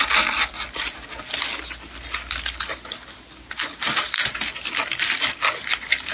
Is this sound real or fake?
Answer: real